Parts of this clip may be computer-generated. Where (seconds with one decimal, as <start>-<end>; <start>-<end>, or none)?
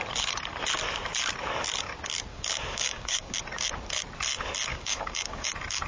2.3-3.3; 4.7-5.5